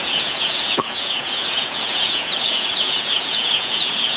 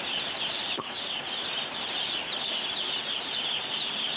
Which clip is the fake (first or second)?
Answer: first